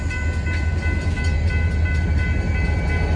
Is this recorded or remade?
recorded